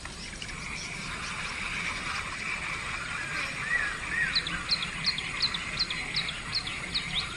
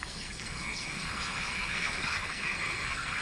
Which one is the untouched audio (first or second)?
first